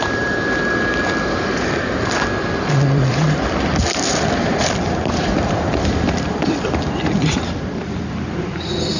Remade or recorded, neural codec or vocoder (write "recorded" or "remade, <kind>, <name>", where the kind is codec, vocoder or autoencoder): remade, vocoder, BigVGAN v2